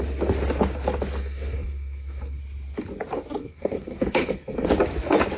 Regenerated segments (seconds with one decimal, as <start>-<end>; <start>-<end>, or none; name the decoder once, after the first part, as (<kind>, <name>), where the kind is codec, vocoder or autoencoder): 1.2-2.4 (codec, SNAC); 3.4-4.7